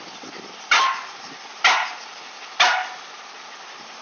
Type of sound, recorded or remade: remade